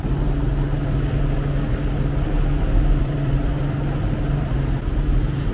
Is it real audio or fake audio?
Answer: real